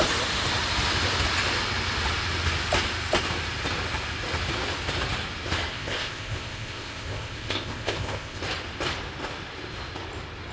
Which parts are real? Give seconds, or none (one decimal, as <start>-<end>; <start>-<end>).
0.0-5.7; 8.4-10.5